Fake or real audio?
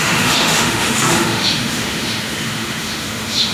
fake